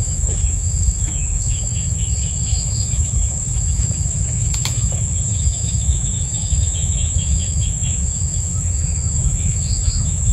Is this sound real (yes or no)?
no